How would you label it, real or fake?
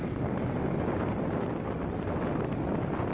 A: real